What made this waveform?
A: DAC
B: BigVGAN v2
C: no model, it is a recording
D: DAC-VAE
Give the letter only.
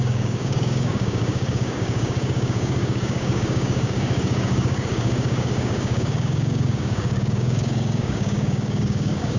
A